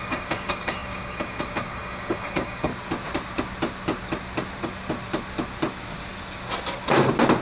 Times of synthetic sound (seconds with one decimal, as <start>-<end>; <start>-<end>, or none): 0.0-2.7